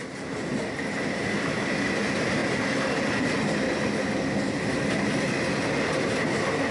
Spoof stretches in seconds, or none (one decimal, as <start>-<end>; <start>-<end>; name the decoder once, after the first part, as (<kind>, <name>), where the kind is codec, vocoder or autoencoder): none